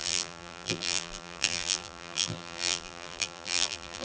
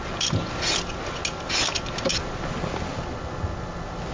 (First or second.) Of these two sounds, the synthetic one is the first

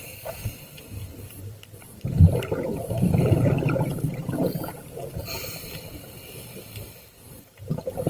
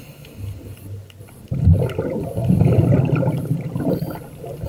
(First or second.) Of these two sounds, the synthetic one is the first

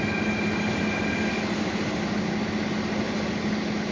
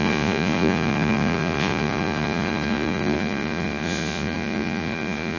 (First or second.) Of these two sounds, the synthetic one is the second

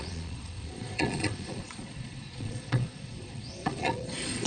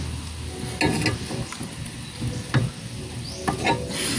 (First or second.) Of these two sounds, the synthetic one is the first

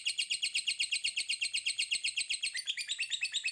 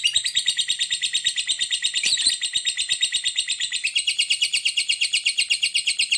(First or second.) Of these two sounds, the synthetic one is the second